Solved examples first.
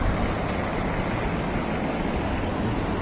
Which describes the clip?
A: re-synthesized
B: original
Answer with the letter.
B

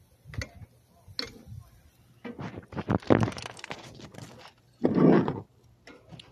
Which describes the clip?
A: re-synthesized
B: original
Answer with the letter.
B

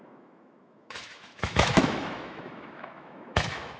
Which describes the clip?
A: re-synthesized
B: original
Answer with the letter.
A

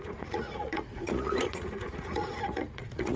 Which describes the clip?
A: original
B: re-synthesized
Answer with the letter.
B